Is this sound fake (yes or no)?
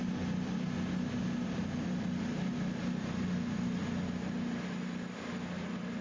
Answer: no